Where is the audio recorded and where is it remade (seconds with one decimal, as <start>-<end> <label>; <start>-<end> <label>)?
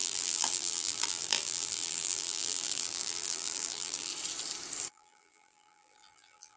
0.0-4.1 remade; 4.1-4.9 recorded; 4.9-6.6 remade